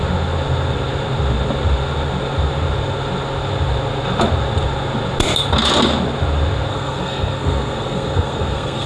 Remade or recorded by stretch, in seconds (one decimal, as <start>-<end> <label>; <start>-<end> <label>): 0.0-6.7 recorded; 6.7-8.9 remade